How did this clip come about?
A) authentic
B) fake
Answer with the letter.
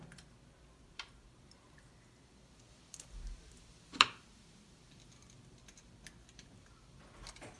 A